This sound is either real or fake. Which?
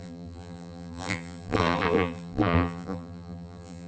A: fake